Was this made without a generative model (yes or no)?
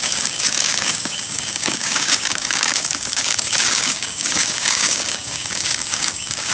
no